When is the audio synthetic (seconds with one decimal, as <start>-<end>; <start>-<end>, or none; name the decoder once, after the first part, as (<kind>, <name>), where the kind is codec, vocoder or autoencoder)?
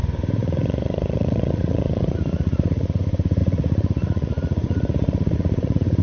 0.4-3.0 (vocoder, Vocos); 3.4-6.0